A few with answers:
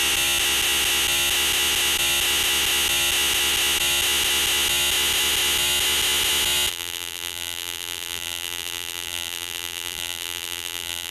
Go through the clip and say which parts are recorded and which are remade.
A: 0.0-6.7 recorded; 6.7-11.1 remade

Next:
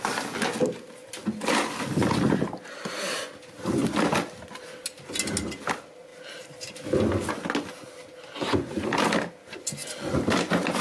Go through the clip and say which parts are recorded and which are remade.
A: 0.0-10.8 recorded